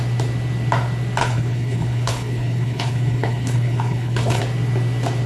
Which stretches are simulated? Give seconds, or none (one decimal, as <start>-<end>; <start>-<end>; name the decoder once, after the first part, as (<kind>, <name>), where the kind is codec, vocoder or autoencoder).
1.2-4.4 (codec, HILCodec)